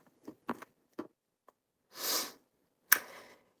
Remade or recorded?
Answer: recorded